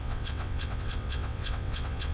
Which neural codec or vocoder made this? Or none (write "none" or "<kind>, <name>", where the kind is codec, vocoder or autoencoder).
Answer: vocoder, WaveNeXt